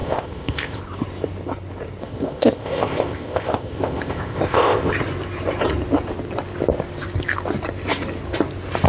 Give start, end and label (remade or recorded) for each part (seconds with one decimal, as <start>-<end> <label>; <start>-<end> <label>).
0.0-0.8 remade; 0.8-2.0 recorded; 2.0-4.9 remade; 4.9-8.9 recorded